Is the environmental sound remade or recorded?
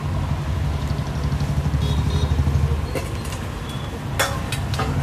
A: recorded